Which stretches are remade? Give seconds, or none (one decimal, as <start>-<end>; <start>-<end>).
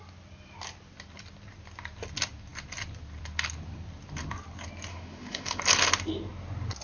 4.9-5.6